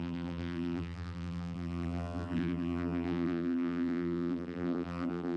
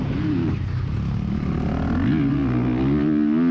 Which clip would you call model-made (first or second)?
first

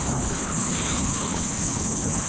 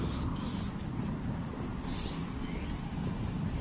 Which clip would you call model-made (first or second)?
first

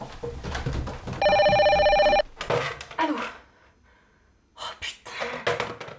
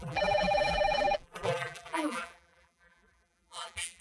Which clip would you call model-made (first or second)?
second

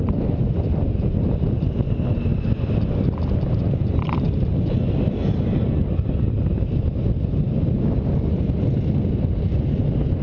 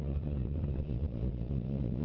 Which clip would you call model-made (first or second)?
second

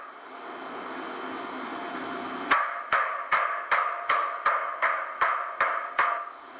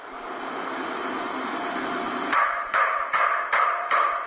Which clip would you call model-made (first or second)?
second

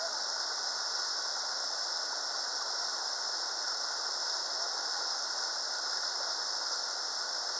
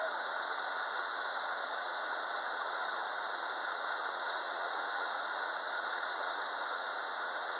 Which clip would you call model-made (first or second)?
second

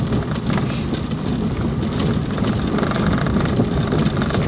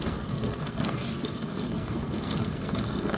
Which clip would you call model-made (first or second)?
second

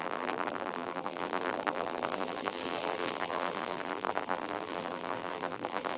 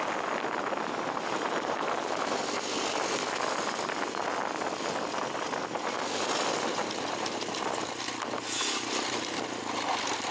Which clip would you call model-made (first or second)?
first